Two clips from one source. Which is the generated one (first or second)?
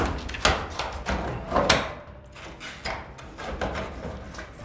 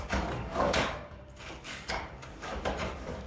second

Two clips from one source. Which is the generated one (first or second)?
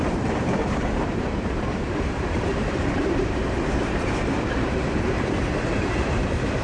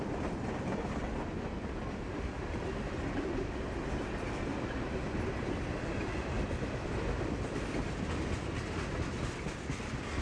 first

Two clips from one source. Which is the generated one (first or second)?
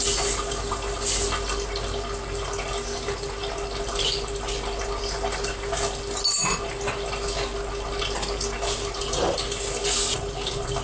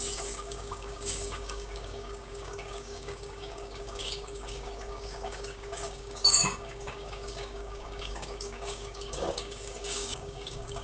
second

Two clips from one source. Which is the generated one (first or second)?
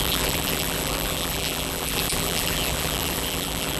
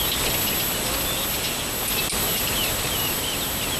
first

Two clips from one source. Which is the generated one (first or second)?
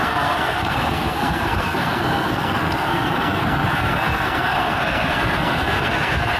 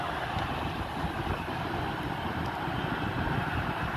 first